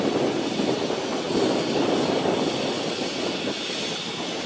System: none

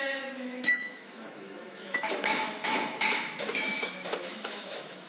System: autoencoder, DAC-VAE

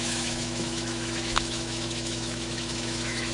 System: autoencoder, DAC-VAE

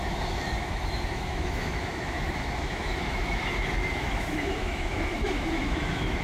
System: autoencoder, DAC-VAE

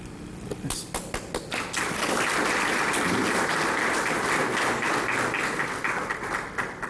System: none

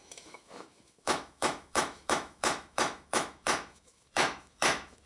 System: autoencoder, DAC-VAE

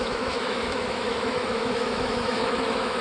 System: autoencoder, DAC-VAE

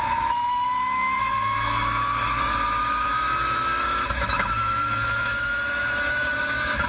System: autoencoder, DAC-VAE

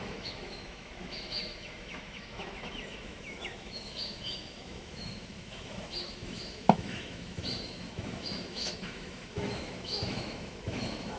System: autoencoder, DAC-VAE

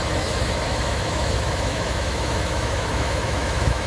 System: autoencoder, DAC-VAE